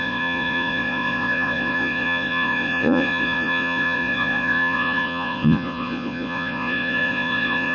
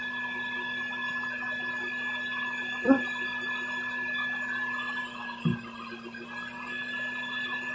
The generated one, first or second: first